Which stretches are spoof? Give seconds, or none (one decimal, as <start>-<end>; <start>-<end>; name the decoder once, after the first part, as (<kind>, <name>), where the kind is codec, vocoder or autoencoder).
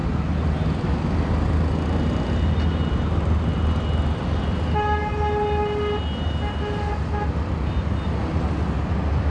none